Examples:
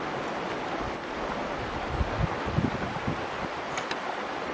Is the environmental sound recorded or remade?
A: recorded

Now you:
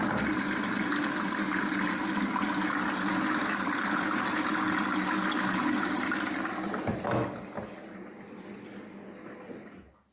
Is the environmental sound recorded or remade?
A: recorded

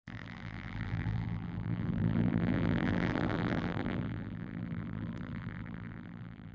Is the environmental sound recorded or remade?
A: remade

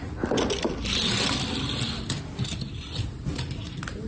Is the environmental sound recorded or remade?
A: recorded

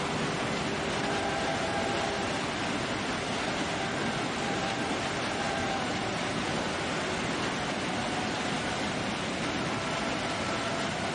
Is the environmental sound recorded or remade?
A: recorded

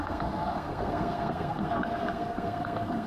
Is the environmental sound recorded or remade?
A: remade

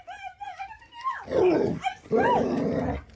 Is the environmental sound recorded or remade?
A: recorded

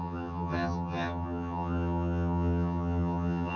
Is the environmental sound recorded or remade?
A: remade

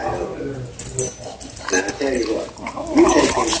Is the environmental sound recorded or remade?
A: recorded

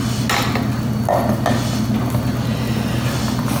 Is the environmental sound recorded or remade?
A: recorded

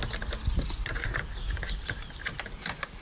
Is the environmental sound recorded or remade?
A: recorded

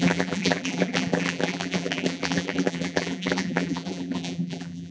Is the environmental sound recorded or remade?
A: remade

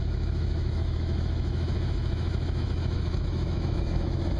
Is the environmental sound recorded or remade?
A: remade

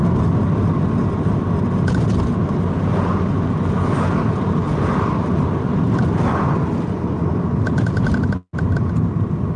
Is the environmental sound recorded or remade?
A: recorded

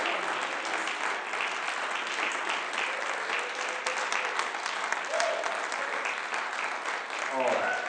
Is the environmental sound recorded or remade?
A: recorded